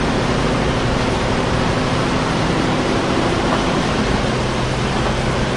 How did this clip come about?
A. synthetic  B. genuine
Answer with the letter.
A